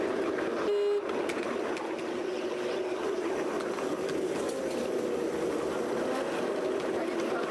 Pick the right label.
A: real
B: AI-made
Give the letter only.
A